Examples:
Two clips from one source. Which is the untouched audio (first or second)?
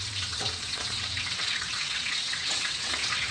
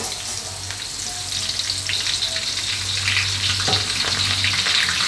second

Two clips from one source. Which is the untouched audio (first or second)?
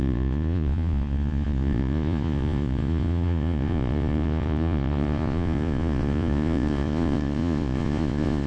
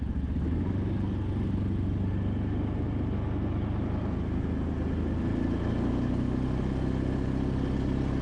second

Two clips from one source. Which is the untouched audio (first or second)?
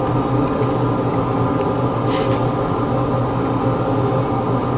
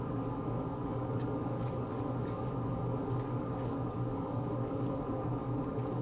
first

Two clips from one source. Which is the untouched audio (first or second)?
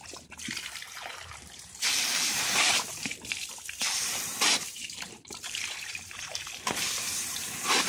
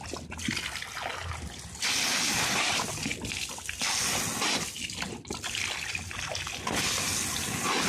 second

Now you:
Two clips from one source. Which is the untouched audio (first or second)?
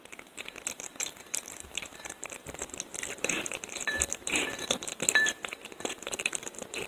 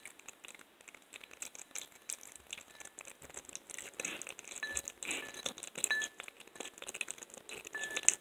second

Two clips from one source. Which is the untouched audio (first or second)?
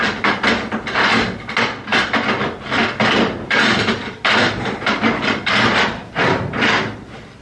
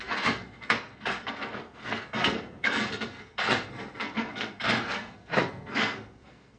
first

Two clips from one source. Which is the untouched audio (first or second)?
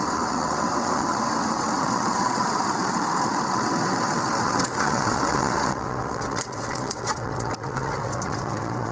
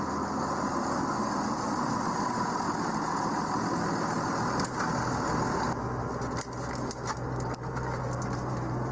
second